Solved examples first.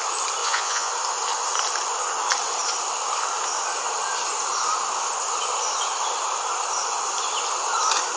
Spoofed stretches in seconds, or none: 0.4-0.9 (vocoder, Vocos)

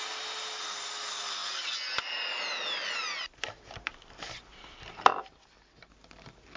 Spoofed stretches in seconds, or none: none